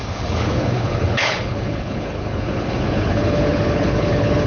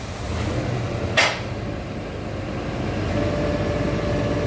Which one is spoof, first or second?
first